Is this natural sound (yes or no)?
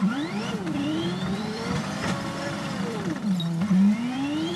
no